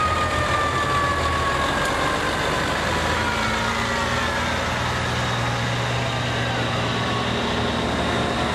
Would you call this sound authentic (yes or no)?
yes